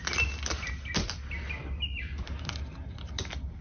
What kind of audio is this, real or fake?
real